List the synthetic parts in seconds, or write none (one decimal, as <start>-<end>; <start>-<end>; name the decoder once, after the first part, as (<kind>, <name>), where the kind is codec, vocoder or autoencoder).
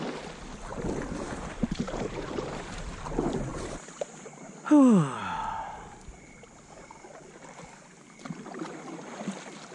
0.7-3.0 (vocoder, BigVGAN v2); 3.5-4.1